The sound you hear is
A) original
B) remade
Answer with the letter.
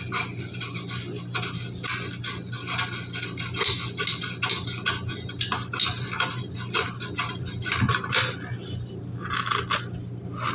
A